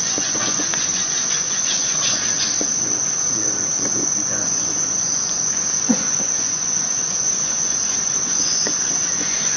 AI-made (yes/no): yes